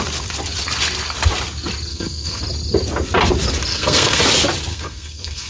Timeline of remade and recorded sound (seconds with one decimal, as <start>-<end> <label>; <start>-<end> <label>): 0.0-1.9 recorded; 1.9-2.4 remade; 2.4-3.7 recorded; 3.7-4.2 remade; 4.2-4.7 recorded; 4.7-5.5 remade